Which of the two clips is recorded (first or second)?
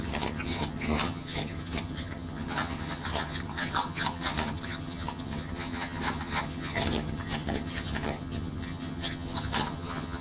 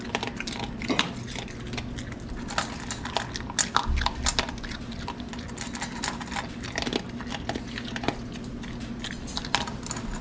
second